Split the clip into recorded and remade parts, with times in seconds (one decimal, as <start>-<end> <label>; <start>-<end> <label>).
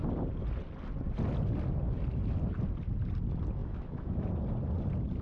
0.0-3.6 recorded; 3.6-4.3 remade; 4.3-5.2 recorded